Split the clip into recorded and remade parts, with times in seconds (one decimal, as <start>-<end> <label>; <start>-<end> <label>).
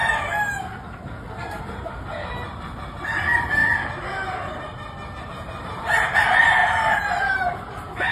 0.0-1.6 recorded; 1.6-3.6 remade; 3.6-5.2 recorded; 5.2-6.6 remade; 6.6-7.2 recorded; 7.2-8.1 remade